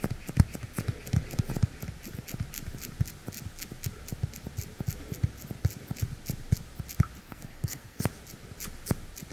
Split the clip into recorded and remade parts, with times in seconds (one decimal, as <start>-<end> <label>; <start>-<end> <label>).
0.0-7.2 recorded; 7.2-8.0 remade; 8.0-9.3 recorded